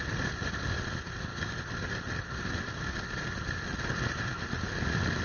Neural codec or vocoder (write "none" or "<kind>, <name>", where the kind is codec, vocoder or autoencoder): none